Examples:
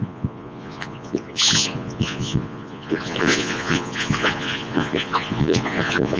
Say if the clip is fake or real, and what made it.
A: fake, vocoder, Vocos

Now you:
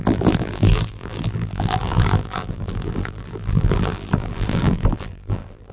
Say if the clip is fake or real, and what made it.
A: fake, vocoder, BigVGAN v2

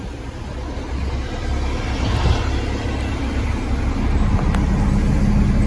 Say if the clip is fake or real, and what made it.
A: real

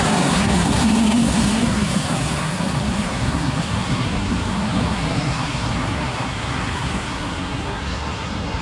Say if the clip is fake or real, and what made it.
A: fake, codec, SNAC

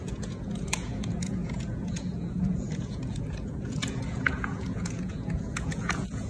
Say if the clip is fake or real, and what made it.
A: fake, vocoder, Vocos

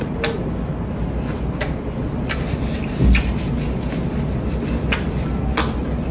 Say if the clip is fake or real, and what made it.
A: real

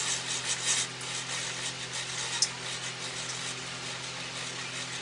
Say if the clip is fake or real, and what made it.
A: real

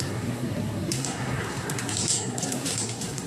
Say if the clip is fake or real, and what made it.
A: fake, codec, SNAC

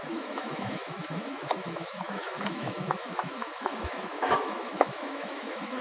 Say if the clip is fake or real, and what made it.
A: fake, autoencoder, DAC-VAE